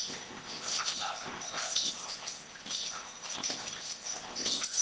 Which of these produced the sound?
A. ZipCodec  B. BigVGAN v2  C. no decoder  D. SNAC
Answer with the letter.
A